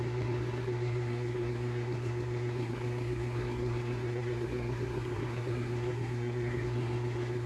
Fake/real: fake